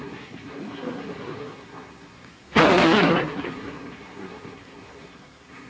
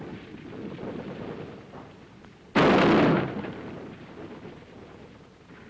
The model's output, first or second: first